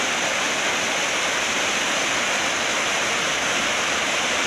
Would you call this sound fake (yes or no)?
no